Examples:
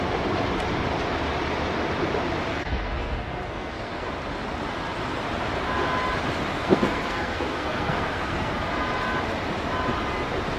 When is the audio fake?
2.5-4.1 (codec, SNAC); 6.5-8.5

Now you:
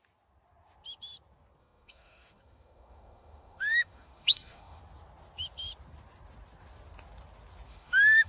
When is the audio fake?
1.6-4.8 (autoencoder, DAC-VAE); 7.7-8.3

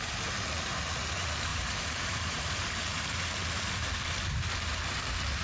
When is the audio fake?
1.5-3.3 (vocoder, BigVGAN v2)

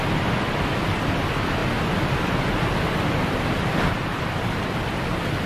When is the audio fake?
none

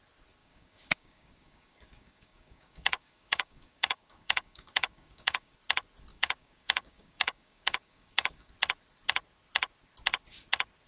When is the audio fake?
0.4-5.5 (codec, DAC); 6.1-8.5

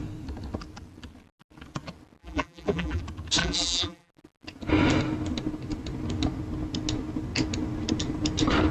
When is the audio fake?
2.2-3.0 (vocoder, BigVGAN v2); 3.4-4.1

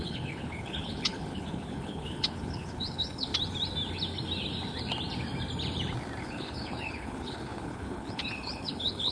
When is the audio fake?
0.0-3.3 (codec, HILCodec); 6.2-9.1